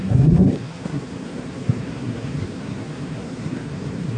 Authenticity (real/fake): fake